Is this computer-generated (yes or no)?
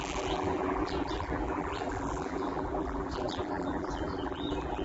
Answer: yes